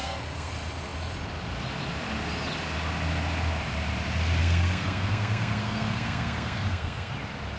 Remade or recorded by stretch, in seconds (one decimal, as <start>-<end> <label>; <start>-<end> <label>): 0.0-0.5 remade; 0.5-4.4 recorded; 4.4-7.1 remade; 7.1-7.6 recorded